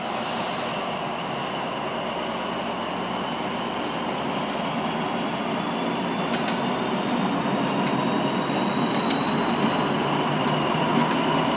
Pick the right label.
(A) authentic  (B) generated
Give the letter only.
A